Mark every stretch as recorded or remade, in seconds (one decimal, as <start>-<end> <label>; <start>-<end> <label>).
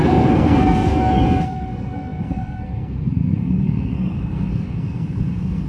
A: 0.0-5.7 remade